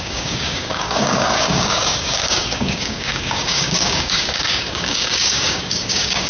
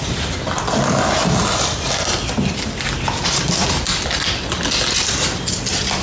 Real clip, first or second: second